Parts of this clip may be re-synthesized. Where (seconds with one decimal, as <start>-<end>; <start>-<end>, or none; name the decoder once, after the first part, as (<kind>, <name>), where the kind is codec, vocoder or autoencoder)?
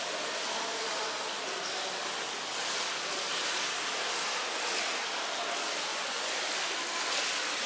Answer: 5.9-6.4 (vocoder, Vocos)